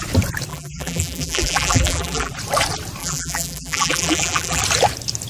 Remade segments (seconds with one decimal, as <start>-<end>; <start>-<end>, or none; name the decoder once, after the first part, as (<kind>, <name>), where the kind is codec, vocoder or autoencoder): 0.5-2.3 (vocoder, BigVGAN v2); 3.0-4.6